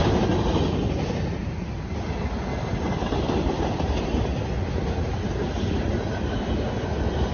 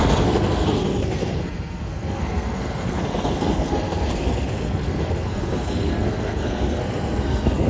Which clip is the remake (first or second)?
second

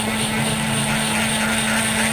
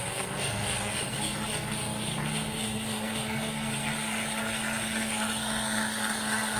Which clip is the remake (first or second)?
second